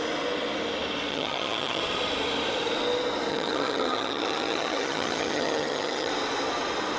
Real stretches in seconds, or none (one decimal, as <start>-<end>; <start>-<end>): 0.0-1.1; 1.8-3.3; 6.1-7.0